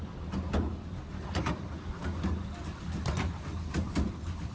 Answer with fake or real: real